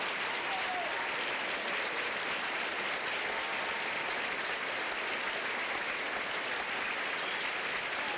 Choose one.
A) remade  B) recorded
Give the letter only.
B